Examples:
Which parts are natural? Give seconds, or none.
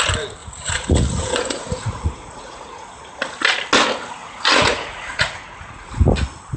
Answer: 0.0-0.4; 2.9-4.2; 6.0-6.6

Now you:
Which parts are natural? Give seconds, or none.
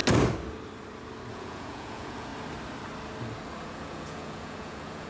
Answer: 0.0-1.3; 2.3-3.7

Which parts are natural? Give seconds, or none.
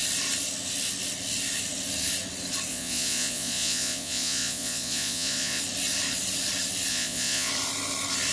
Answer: 0.0-2.7; 5.6-6.9; 7.5-8.3